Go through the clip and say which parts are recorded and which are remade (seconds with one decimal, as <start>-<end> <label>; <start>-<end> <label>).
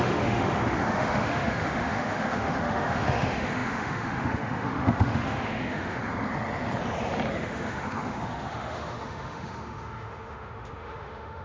0.0-6.0 remade; 6.0-7.3 recorded; 7.3-11.4 remade